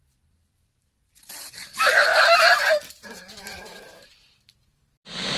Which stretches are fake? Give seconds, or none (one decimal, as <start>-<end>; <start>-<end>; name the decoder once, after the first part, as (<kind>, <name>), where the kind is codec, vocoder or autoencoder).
0.0-5.4 (vocoder, BigVGAN v2)